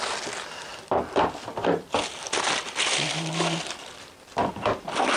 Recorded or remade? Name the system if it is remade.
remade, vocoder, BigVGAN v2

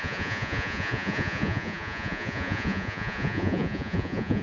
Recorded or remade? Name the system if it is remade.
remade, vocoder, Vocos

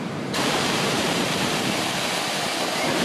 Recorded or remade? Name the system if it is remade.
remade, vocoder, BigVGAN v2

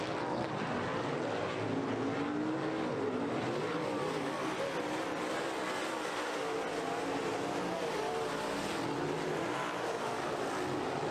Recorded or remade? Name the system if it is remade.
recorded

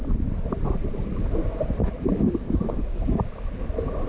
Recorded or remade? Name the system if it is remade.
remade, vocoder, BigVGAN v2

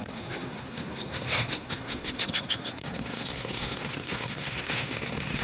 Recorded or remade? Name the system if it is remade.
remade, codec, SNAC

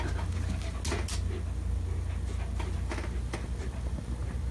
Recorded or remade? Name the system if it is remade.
recorded